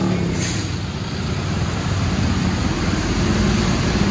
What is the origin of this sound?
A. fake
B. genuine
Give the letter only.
B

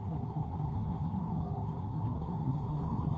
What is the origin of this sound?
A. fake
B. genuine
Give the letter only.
A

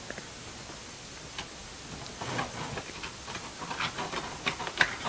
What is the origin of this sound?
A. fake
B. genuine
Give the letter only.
B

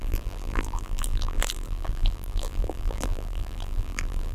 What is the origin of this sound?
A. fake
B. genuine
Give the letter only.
A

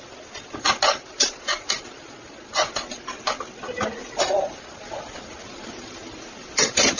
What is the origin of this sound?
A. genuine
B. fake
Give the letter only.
A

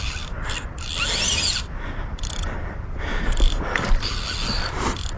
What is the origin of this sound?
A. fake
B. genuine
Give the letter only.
B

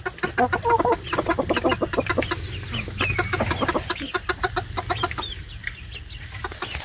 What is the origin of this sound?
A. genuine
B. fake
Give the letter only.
A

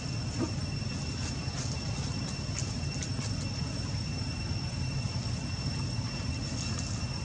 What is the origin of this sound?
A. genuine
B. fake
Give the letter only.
A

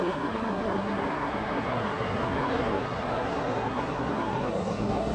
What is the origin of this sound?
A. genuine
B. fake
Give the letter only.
B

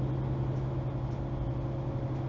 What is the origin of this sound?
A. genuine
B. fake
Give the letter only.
A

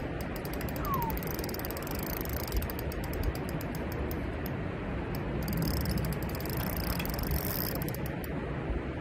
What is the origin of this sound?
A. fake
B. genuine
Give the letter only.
B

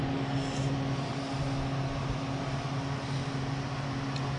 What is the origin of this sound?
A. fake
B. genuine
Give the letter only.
B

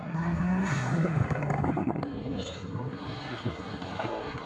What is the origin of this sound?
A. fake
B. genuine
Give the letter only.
A